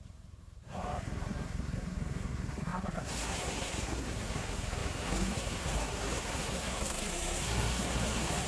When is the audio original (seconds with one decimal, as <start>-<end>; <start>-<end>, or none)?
none